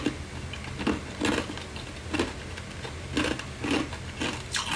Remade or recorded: recorded